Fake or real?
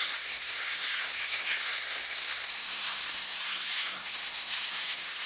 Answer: fake